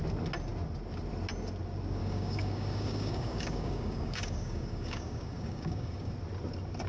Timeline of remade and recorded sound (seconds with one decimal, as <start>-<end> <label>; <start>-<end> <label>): 0.0-2.0 recorded; 2.0-6.1 remade; 6.1-6.9 recorded